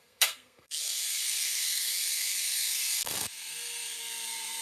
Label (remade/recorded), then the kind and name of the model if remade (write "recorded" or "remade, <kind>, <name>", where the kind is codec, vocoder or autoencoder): remade, codec, SNAC